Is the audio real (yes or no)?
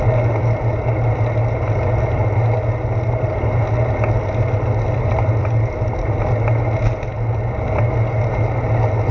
yes